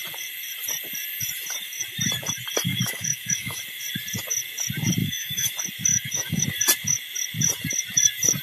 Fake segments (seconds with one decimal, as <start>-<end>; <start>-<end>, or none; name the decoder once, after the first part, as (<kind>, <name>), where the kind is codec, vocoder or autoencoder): 2.7-3.6 (autoencoder, DAC-VAE); 5.0-5.5; 5.9-6.4

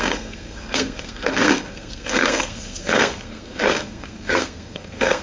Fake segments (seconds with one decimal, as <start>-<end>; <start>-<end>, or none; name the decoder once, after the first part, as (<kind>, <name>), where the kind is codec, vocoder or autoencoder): 0.0-5.2 (codec, SNAC)

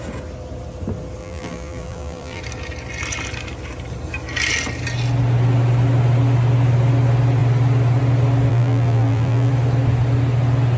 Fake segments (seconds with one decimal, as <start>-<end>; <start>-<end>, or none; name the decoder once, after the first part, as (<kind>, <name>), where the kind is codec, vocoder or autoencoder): 1.2-2.4 (vocoder, BigVGAN v2); 8.5-9.5

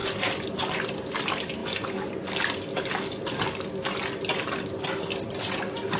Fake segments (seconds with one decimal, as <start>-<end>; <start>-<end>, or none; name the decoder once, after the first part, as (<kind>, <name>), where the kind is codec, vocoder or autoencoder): none

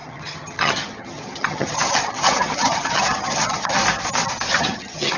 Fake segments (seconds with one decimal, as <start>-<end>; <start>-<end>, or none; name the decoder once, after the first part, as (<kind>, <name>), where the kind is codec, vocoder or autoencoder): 0.0-3.8 (vocoder, HiFi-GAN); 4.5-5.2